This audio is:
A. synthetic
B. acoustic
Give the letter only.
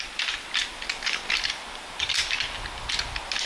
B